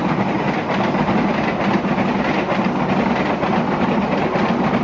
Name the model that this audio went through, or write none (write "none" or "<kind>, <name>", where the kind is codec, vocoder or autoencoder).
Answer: none